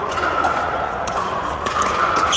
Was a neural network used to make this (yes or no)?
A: yes